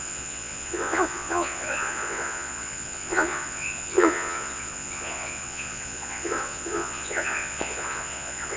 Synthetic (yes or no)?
yes